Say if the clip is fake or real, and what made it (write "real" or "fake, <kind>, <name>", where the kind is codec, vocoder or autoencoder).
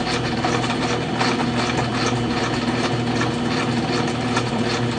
real